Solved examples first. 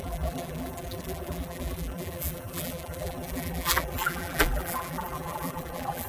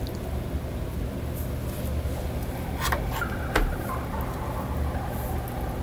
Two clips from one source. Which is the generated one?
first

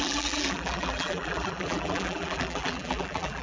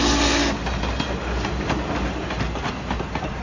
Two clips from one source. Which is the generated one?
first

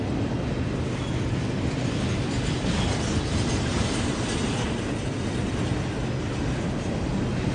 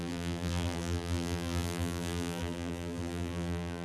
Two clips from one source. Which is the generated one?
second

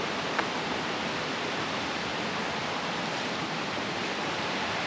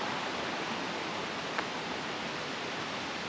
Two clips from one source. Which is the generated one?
first